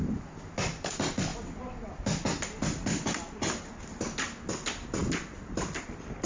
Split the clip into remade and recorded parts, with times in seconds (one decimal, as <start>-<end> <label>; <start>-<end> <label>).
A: 0.0-6.3 recorded